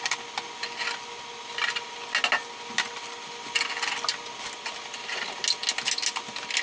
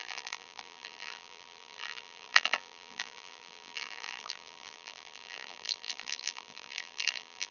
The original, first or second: first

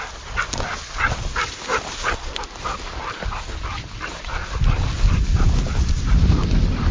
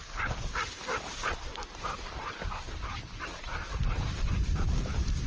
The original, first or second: first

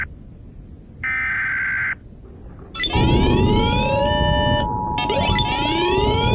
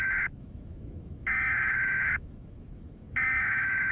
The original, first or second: first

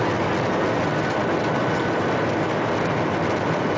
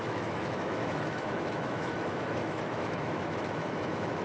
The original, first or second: first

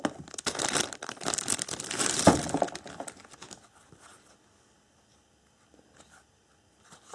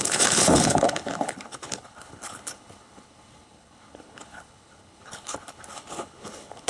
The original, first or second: first